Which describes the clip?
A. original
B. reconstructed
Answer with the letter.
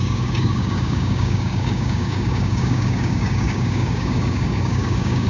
B